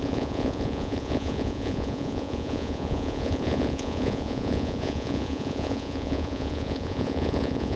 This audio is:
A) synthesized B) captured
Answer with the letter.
A